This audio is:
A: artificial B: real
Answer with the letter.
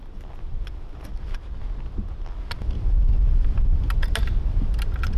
B